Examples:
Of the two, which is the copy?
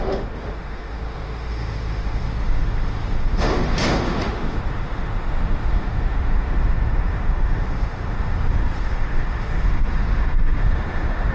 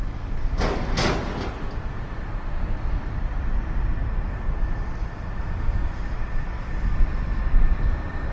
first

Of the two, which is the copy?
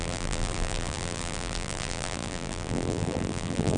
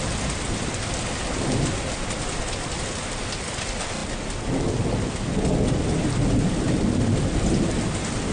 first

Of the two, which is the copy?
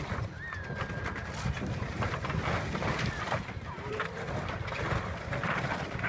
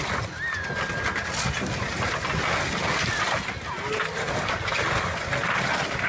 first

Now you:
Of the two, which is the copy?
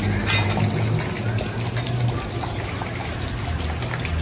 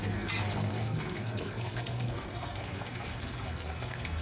second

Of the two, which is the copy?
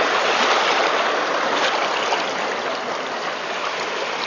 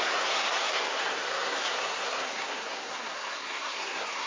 second